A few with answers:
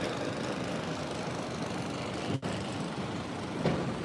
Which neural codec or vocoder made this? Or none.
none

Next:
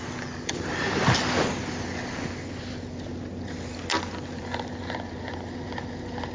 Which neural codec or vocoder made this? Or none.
none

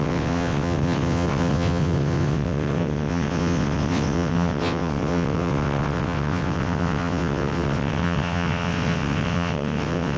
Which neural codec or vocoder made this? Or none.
vocoder, WaveNeXt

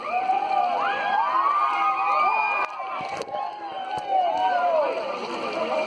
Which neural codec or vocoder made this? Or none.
none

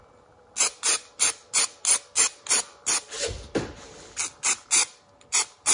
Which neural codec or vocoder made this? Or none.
none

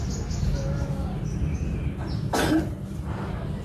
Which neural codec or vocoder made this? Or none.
none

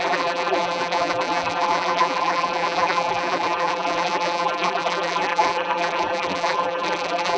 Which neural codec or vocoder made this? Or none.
vocoder, BigVGAN v2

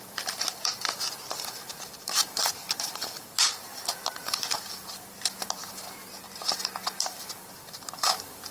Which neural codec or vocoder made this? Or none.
vocoder, BigVGAN v2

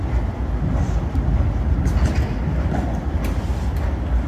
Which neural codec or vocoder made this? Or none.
none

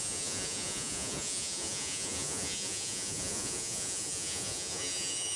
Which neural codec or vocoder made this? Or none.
vocoder, Vocos